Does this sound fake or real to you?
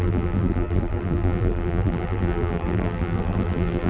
fake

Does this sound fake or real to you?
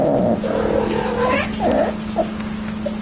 real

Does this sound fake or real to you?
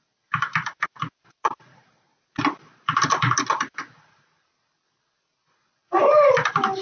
real